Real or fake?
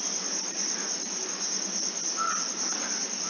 real